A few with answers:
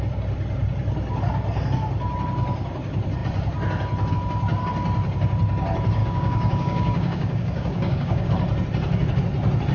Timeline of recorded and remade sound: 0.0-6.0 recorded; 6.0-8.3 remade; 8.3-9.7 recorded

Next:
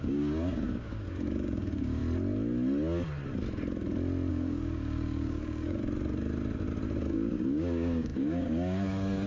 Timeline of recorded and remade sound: 0.0-2.0 remade; 2.0-4.3 recorded; 4.3-5.8 remade; 5.8-7.0 recorded; 7.0-9.3 remade